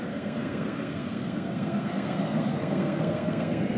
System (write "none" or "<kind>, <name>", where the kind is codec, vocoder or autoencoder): codec, SNAC